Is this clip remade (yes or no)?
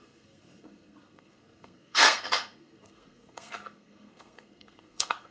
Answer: yes